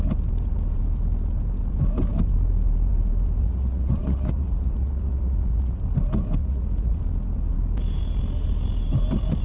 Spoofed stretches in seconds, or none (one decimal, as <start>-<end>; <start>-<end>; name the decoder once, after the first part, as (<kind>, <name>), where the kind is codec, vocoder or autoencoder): 3.4-5.8 (vocoder, Vocos); 6.4-7.0